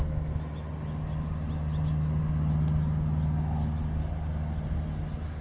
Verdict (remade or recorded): recorded